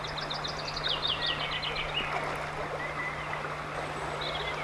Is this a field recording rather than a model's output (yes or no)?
yes